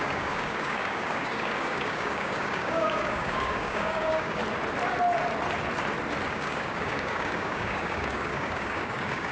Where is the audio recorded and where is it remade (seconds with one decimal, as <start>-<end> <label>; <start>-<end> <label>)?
0.0-4.4 remade; 4.4-6.3 recorded; 6.3-9.3 remade